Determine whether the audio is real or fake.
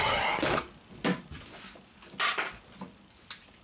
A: real